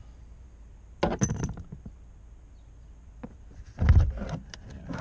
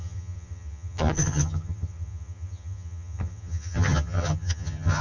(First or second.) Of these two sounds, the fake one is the second